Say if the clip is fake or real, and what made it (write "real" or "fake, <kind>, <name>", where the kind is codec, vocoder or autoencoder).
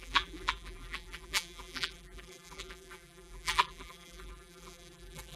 fake, vocoder, BigVGAN v2